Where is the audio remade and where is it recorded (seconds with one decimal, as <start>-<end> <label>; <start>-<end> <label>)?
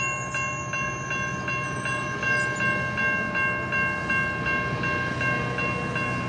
0.0-6.3 recorded